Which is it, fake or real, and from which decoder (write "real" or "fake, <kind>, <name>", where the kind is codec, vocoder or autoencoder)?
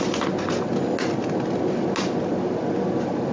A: real